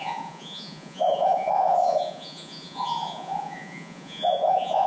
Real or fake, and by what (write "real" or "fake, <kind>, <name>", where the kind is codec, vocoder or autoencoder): fake, vocoder, Vocos